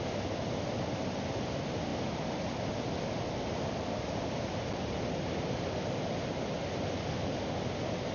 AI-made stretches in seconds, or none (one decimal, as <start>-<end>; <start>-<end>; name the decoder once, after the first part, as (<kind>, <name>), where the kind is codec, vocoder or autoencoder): none